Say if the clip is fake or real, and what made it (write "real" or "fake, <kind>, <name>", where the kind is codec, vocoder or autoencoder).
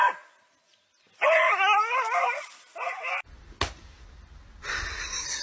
real